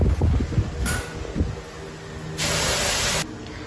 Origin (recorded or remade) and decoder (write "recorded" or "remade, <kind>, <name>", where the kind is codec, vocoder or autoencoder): recorded